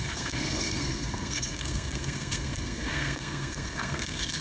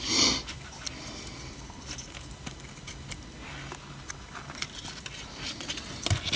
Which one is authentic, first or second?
second